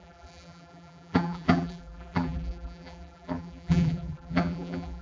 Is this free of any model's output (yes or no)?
no